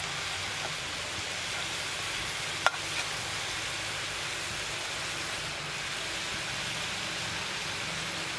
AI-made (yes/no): no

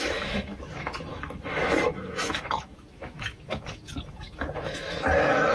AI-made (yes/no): yes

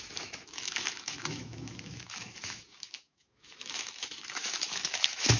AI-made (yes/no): yes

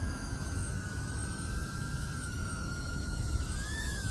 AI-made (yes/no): yes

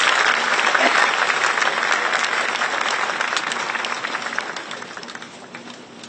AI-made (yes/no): no